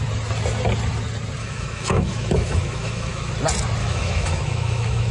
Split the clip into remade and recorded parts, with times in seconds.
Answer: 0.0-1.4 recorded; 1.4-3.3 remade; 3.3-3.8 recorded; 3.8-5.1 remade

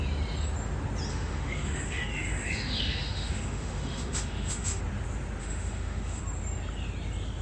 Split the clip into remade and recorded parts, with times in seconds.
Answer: 0.0-1.1 recorded; 1.1-4.8 remade; 4.8-5.4 recorded; 5.4-6.2 remade; 6.2-7.4 recorded

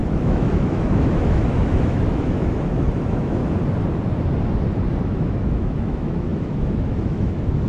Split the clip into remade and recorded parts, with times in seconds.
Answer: 0.0-3.4 remade; 3.4-5.0 recorded; 5.0-7.7 remade